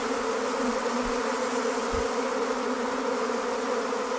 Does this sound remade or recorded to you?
recorded